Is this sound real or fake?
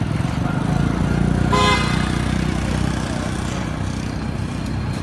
real